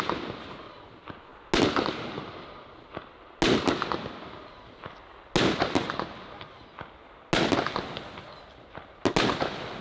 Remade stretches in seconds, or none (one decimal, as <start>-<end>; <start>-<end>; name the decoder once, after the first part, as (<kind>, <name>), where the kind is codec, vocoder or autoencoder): none